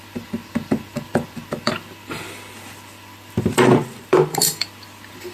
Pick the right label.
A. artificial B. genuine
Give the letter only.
A